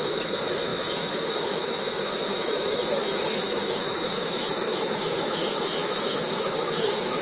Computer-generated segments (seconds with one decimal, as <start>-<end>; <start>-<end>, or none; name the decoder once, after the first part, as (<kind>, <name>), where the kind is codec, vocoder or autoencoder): 0.0-7.2 (autoencoder, DAC-VAE)